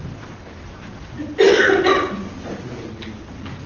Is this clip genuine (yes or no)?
yes